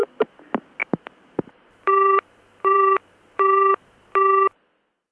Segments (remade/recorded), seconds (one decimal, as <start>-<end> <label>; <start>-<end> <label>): 0.0-0.8 recorded; 0.8-3.9 remade; 3.9-5.1 recorded